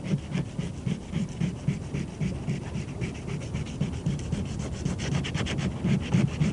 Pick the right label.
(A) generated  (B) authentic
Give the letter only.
B